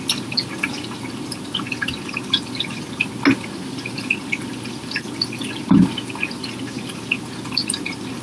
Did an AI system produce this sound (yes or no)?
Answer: no